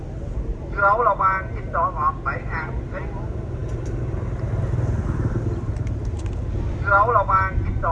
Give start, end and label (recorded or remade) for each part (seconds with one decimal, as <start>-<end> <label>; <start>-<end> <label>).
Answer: 0.0-7.9 recorded